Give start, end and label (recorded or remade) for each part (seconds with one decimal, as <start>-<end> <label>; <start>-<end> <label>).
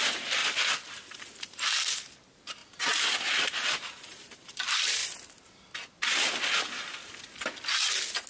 0.0-0.4 remade; 0.4-1.2 recorded; 1.2-5.0 remade; 5.0-8.3 recorded